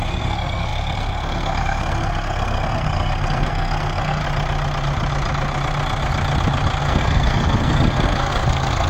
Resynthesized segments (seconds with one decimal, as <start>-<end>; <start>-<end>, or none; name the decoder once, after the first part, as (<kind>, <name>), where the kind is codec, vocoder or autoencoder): 0.0-4.2 (codec, SNAC); 6.8-8.9